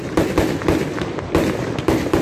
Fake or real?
real